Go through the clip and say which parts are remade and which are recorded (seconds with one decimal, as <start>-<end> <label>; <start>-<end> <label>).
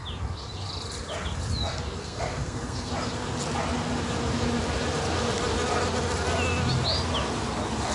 0.0-2.0 recorded; 2.0-2.9 remade; 2.9-7.9 recorded